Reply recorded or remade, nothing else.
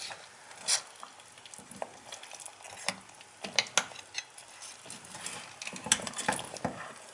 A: recorded